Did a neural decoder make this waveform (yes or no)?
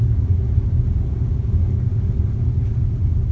no